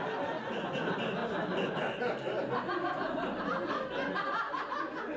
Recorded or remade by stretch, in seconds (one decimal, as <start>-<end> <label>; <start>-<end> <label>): 0.0-5.2 recorded